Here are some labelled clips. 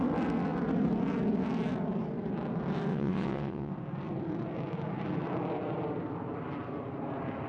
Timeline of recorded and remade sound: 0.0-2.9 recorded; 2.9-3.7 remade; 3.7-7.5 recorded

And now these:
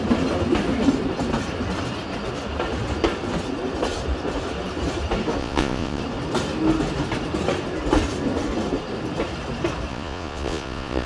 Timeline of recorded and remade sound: 0.0-5.4 recorded; 5.4-6.0 remade; 6.0-9.9 recorded; 9.9-11.1 remade

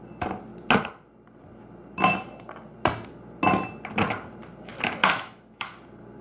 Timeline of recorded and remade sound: 0.0-5.0 recorded; 5.0-5.6 remade; 5.6-6.2 recorded